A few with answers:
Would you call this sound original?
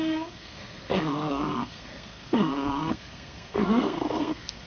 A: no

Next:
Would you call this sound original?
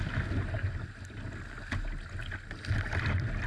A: yes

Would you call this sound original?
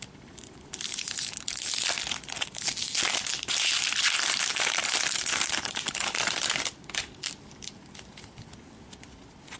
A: no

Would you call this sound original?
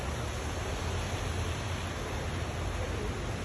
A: yes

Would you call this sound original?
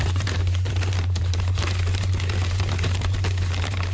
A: no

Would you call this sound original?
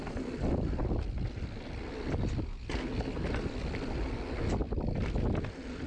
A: yes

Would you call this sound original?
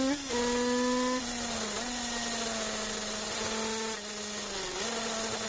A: yes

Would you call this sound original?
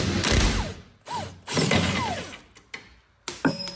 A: yes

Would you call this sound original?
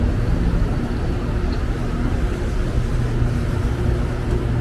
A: yes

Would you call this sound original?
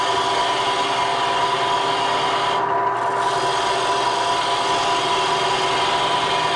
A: yes